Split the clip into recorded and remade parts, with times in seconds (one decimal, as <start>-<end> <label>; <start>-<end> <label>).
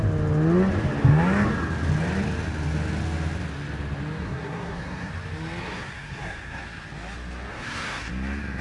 0.0-4.2 recorded; 4.2-5.1 remade; 5.1-5.6 recorded; 5.6-6.6 remade; 6.6-7.5 recorded; 7.5-8.1 remade; 8.1-8.6 recorded